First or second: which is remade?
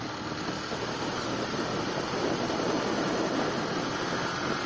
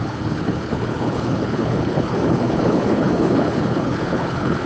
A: second